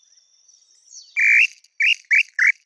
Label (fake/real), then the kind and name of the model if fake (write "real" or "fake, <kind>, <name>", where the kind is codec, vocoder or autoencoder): real